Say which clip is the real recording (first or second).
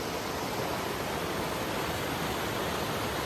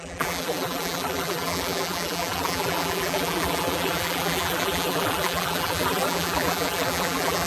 first